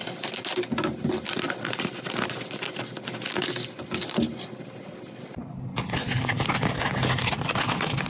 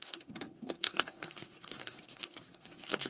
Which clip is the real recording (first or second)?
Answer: first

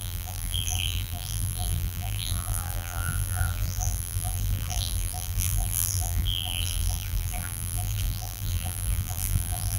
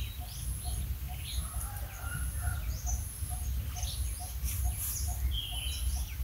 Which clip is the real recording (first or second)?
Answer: second